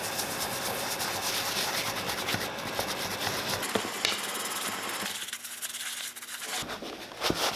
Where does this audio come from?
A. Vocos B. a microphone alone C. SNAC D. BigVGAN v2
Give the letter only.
B